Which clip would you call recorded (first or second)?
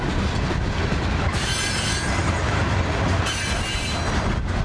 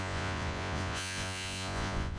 first